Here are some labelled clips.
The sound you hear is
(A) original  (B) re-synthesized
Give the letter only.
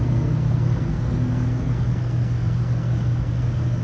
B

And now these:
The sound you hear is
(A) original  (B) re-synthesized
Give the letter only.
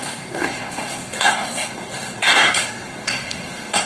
B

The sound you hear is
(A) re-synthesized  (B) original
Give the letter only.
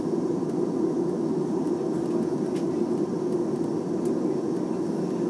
B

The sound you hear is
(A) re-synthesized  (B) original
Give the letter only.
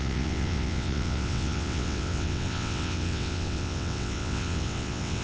A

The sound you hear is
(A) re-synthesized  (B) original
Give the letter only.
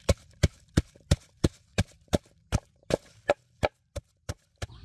B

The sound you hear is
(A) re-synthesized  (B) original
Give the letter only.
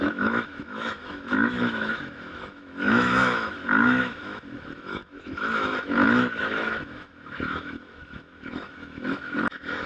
A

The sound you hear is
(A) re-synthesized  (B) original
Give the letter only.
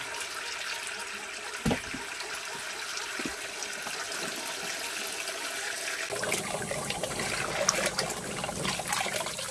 B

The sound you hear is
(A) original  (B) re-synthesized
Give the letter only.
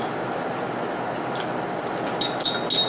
A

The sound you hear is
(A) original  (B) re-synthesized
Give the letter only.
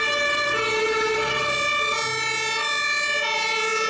A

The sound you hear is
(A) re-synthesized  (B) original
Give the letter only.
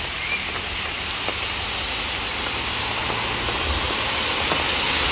B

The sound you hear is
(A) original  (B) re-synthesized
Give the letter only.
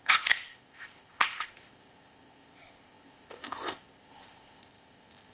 B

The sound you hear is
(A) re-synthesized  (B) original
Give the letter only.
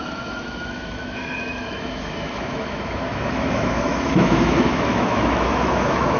A